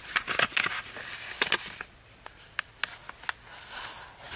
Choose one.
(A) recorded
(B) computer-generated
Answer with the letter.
A